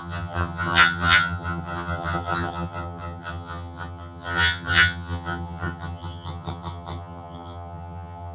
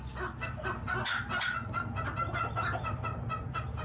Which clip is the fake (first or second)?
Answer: first